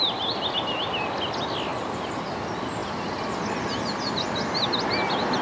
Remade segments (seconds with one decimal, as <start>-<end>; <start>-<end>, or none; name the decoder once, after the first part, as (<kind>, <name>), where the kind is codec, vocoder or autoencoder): none